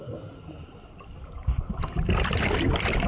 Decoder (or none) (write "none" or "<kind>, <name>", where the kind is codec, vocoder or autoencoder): none